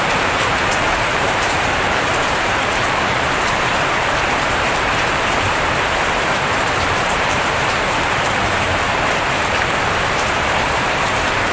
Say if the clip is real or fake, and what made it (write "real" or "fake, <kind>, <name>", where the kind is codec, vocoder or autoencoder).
fake, vocoder, BigVGAN v2